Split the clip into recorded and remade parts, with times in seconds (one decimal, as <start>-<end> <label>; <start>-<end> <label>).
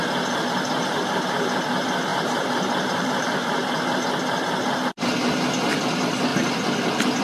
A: 0.0-2.1 recorded; 2.1-3.2 remade; 3.2-7.2 recorded